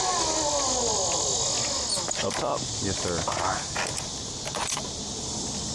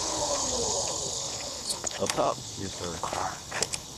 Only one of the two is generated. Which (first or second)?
second